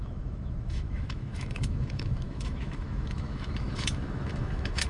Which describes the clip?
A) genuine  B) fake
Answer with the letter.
B